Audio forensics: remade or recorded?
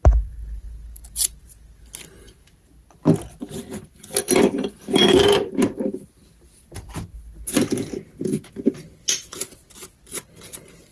recorded